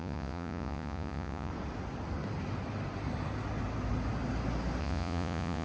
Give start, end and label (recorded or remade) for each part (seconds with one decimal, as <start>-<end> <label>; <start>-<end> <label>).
0.0-1.5 remade; 1.5-4.8 recorded; 4.8-5.6 remade